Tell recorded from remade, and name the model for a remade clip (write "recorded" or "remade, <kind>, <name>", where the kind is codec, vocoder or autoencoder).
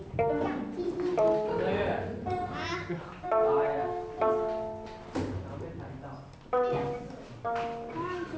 recorded